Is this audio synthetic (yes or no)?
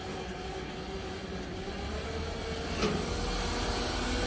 no